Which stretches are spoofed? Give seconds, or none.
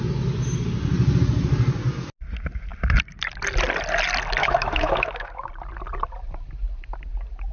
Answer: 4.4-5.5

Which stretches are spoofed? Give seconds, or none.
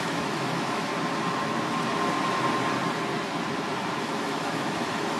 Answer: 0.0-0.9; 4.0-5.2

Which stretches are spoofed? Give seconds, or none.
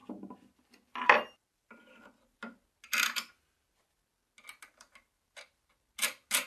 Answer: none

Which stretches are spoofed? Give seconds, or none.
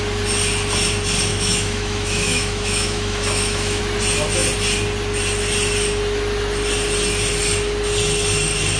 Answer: 1.3-3.8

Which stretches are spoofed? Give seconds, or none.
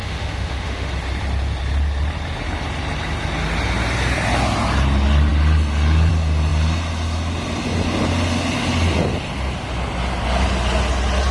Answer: 0.0-0.9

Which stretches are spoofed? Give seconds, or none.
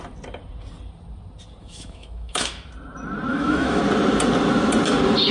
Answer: 1.6-2.7; 3.3-3.8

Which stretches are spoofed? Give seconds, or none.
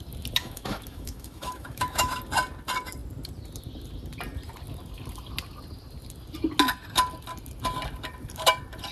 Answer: 0.4-2.2